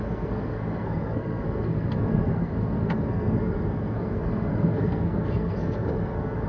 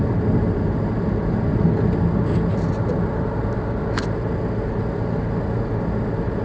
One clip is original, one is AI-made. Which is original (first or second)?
second